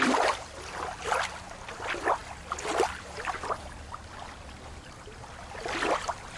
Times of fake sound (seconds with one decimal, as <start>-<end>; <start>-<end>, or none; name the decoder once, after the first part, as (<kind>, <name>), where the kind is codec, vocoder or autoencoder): none